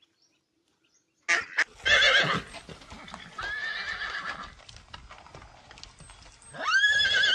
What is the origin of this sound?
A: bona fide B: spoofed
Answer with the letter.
A